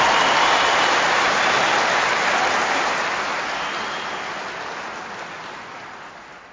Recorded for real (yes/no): yes